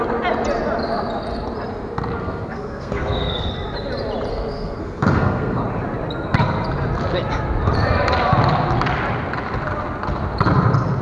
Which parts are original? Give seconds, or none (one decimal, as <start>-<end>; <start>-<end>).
0.0-2.2; 3.5-4.3; 5.6-11.0